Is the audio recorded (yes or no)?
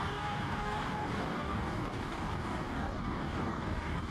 no